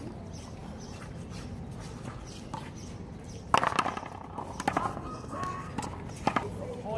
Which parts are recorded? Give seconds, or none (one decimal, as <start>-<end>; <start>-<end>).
0.0-4.9; 5.7-7.0